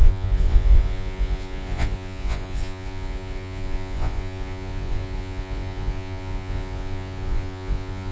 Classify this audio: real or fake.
fake